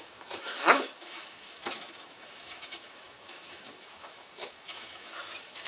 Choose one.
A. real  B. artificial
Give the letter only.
B